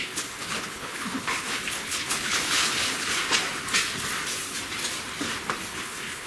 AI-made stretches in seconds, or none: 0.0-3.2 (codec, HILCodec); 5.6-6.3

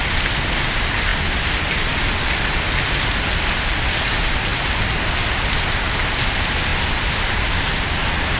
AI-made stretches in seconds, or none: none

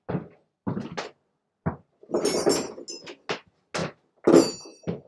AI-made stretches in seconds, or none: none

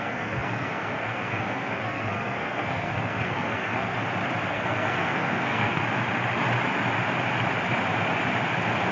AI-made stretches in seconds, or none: 0.0-4.0 (codec, SNAC); 4.5-5.8